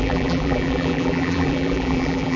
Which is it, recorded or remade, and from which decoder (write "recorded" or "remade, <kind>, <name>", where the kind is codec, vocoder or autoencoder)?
remade, vocoder, BigVGAN v2